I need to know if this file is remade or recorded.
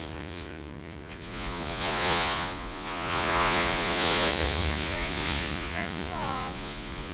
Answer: remade